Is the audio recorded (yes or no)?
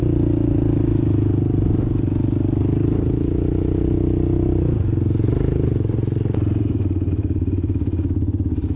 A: yes